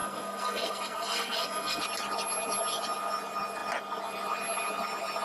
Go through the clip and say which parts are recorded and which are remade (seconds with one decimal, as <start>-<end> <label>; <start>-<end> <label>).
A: 0.0-1.8 remade; 1.8-5.2 recorded